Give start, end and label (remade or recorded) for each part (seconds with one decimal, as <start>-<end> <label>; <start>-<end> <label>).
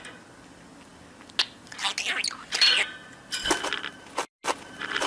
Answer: 0.0-5.1 recorded